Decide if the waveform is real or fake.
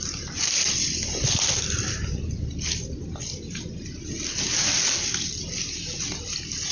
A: real